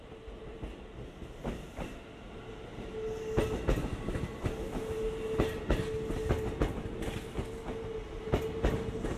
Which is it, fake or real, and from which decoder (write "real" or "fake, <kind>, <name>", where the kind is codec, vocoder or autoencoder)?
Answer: real